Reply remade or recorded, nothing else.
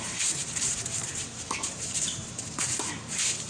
remade